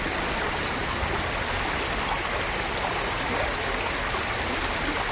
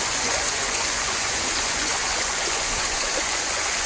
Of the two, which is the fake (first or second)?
second